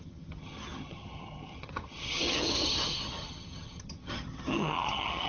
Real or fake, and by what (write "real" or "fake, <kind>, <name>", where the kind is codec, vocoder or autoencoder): fake, vocoder, HiFi-GAN